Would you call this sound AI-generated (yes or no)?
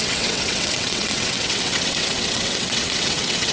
yes